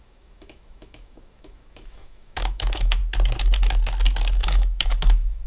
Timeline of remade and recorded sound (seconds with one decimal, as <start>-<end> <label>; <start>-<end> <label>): 0.0-3.0 remade; 3.0-4.3 recorded; 4.3-5.5 remade

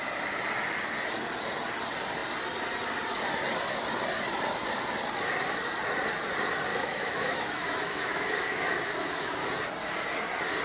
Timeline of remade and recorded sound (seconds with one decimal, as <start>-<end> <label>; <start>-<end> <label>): 0.0-6.7 recorded; 6.7-9.5 remade; 9.5-10.6 recorded